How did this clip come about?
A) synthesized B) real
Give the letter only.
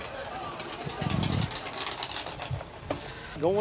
B